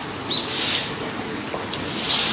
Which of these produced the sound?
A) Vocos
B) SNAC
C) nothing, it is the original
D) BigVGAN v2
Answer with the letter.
C